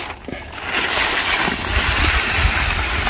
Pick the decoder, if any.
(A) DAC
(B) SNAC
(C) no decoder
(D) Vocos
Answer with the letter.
C